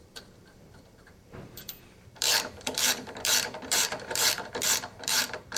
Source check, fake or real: fake